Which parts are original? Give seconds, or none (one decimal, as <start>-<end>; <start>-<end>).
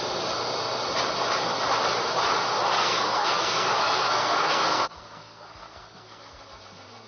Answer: 0.0-2.7; 6.4-7.1